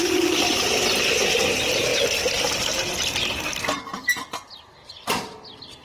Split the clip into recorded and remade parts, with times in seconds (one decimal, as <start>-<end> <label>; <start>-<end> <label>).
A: 0.0-5.8 recorded